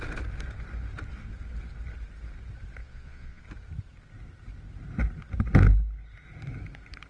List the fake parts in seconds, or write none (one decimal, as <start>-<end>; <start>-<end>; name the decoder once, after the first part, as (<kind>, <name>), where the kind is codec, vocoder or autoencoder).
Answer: 2.8-3.4 (vocoder, Vocos)